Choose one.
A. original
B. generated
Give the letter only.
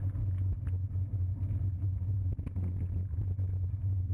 A